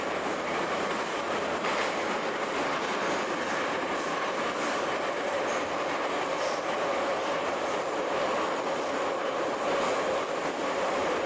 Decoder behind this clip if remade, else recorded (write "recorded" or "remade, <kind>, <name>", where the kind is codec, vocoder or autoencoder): recorded